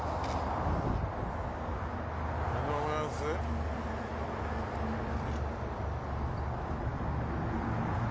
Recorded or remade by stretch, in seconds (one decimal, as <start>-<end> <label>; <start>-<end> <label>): 0.0-8.1 recorded